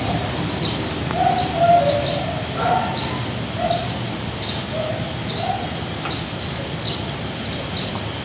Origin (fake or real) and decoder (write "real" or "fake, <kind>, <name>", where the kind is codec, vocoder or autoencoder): real